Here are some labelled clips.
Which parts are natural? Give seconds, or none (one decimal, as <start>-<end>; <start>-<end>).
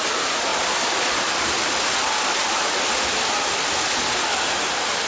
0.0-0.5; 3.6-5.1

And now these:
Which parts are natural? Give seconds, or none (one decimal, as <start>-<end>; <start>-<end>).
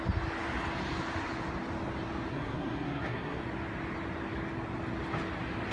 0.0-2.3; 3.4-5.7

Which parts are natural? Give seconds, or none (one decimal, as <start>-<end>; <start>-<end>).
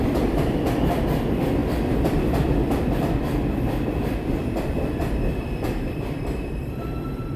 none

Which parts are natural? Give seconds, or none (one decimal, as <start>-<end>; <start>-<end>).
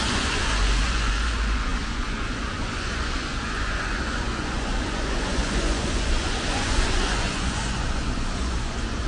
none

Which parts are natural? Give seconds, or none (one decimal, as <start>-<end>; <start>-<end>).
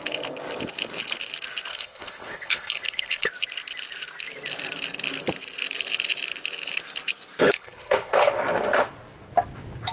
0.0-1.7; 3.3-7.4; 8.3-9.9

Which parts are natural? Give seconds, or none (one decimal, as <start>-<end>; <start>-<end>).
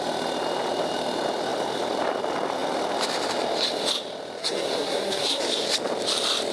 0.0-4.4; 5.4-6.5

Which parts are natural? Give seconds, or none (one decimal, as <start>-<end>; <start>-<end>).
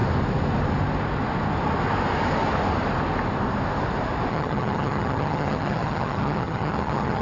0.0-4.3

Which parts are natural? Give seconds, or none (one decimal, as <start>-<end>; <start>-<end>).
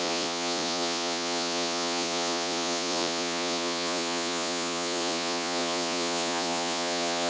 none